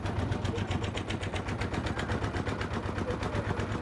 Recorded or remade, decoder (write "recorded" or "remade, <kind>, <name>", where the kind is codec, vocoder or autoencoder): recorded